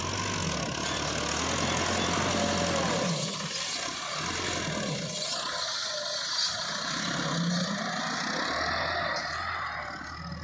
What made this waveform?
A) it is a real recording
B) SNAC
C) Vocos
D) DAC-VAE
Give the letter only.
A